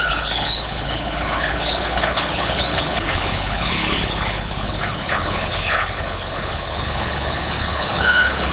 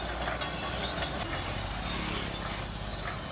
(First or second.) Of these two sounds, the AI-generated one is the first